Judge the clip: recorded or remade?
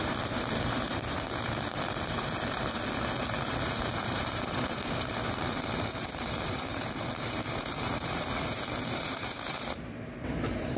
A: remade